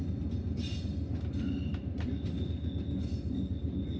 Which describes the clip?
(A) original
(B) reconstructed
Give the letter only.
A